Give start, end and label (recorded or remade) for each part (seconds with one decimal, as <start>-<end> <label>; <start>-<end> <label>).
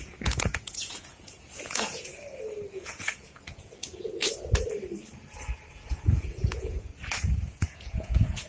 0.0-2.1 remade; 2.1-2.7 recorded; 2.7-4.2 remade; 4.2-5.7 recorded; 5.7-6.9 remade; 6.9-7.6 recorded; 7.6-8.5 remade